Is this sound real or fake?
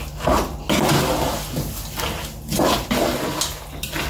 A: real